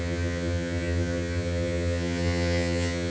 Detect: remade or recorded remade